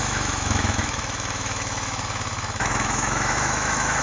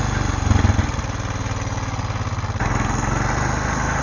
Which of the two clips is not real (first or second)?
first